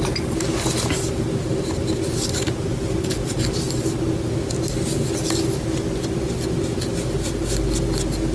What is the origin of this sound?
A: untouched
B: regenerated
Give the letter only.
A